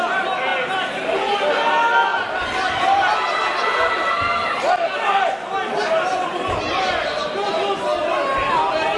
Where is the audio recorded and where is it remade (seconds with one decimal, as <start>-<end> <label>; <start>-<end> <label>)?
0.0-9.0 recorded